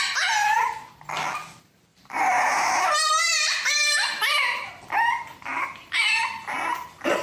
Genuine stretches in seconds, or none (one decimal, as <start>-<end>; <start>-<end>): 0.0-1.9; 4.7-7.2